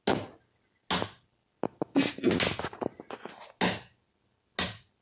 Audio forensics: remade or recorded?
recorded